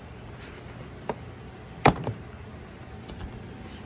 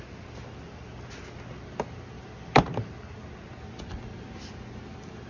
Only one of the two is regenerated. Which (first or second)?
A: first